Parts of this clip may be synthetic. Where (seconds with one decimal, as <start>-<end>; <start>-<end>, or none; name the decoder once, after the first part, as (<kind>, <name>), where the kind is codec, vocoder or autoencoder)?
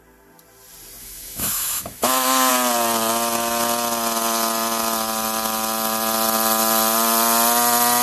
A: 1.0-2.5 (autoencoder, DAC-VAE)